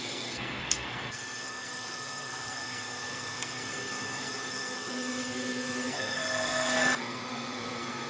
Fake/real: fake